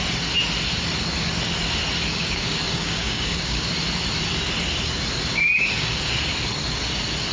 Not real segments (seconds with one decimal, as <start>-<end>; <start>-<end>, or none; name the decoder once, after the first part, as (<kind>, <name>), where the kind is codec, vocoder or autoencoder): 2.1-3.7 (codec, DAC); 5.3-6.1